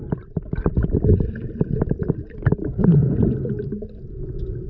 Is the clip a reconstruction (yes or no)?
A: no